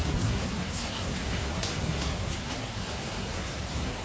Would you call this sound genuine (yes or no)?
no